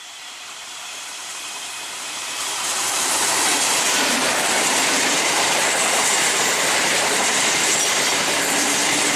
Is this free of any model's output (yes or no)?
no